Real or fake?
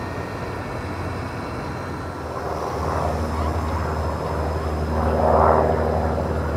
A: real